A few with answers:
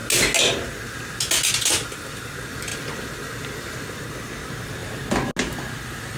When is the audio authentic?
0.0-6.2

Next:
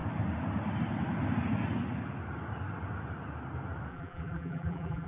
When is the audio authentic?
0.0-3.9

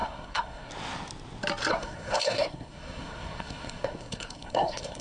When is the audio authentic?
0.7-1.7

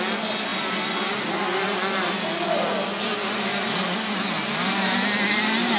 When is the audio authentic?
0.0-5.8

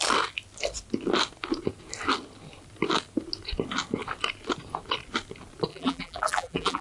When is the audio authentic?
0.0-5.7

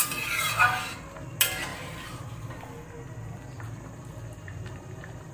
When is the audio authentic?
0.0-1.7; 2.5-5.3

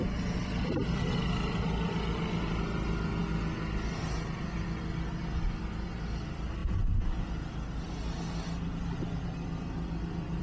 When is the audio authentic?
0.0-10.4